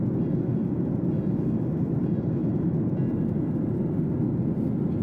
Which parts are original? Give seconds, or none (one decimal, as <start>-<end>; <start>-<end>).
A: 0.0-5.0

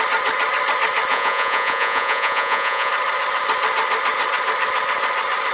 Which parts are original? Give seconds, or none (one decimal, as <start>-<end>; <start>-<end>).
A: 0.0-1.1; 2.9-5.5

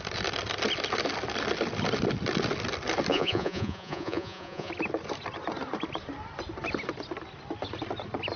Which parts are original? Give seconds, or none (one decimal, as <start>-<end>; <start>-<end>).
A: 0.0-3.1; 4.7-8.4

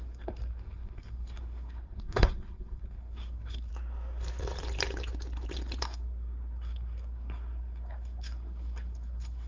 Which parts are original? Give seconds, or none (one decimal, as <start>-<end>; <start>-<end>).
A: 3.7-5.8

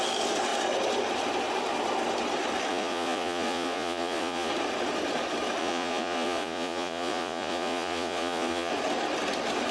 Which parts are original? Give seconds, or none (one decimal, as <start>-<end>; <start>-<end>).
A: 0.0-2.7; 4.5-5.6; 8.7-9.7

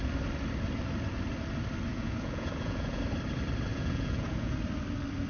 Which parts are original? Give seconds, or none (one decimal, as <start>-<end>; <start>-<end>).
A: 0.0-1.9; 3.0-3.7; 4.5-5.3

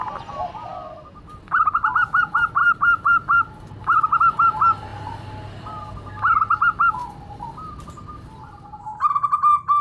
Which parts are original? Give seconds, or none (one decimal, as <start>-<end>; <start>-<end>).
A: 0.0-9.8